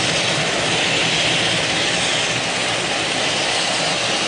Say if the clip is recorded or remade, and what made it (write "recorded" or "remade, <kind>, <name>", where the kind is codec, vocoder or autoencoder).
recorded